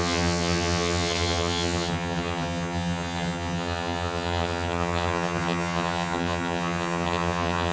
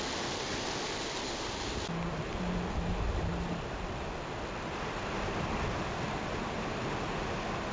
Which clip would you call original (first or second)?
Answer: second